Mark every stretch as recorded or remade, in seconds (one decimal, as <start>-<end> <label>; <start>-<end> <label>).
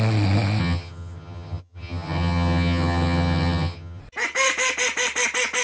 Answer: 0.0-0.6 recorded; 0.6-4.0 remade; 4.0-5.6 recorded